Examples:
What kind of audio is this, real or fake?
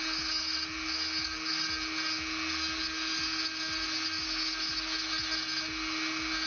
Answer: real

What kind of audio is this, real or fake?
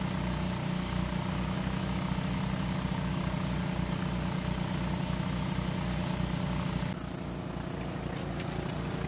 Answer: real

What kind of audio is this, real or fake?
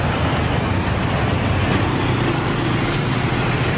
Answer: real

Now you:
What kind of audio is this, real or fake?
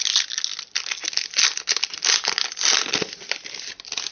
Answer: real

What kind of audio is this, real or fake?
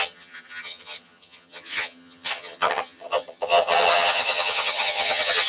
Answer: fake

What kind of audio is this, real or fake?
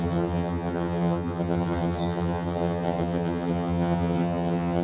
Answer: fake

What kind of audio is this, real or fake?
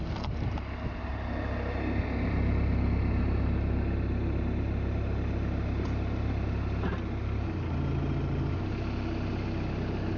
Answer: real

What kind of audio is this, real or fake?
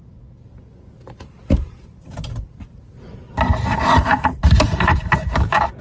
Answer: real